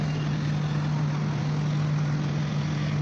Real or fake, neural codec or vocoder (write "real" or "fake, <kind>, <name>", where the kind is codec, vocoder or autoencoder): real